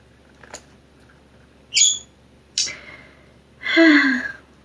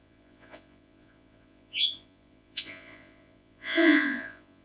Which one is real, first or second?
first